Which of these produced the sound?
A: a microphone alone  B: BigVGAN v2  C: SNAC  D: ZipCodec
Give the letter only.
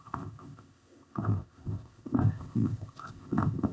D